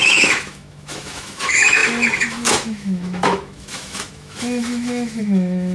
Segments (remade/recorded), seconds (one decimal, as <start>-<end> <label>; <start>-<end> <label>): 0.0-5.7 remade